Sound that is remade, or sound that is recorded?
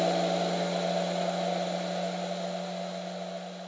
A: recorded